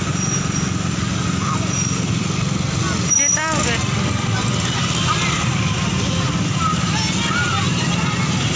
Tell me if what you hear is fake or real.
real